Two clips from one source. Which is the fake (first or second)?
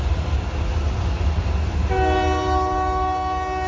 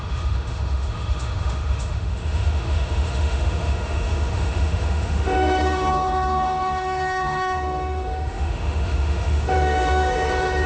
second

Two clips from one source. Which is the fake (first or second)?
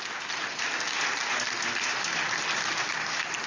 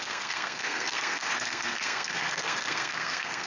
second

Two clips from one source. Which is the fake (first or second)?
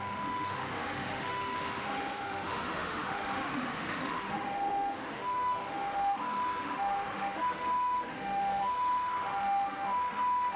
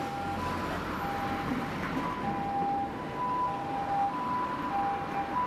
first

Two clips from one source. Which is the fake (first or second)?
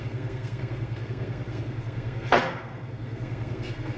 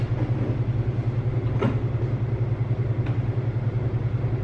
first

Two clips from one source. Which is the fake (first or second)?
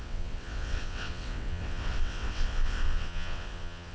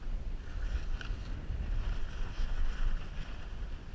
first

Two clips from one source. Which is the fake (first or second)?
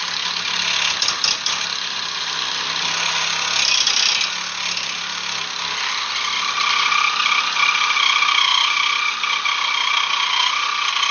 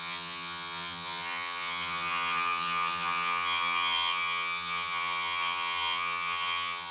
second